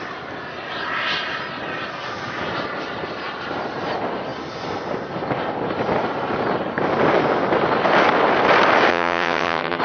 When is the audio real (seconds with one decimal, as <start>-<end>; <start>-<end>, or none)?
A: 0.0-8.9

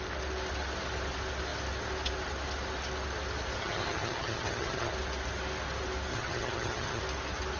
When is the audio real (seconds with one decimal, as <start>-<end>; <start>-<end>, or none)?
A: 0.0-3.6; 4.9-6.1; 7.0-7.6

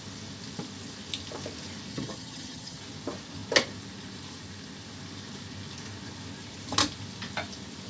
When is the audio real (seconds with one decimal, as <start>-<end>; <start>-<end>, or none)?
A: 0.0-1.9; 2.8-7.9

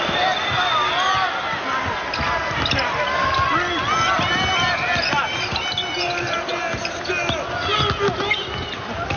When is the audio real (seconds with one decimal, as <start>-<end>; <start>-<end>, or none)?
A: 0.0-9.2

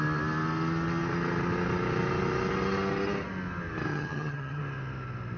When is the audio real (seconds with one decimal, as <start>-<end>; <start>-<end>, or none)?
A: 0.0-3.9; 4.6-5.4

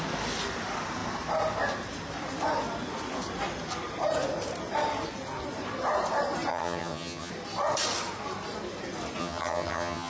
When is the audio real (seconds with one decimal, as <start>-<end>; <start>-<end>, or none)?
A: 0.0-6.5; 7.3-9.2

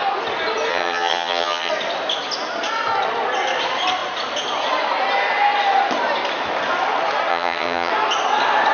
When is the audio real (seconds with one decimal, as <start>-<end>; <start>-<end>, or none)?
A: 0.0-0.7; 1.7-7.3; 7.9-8.7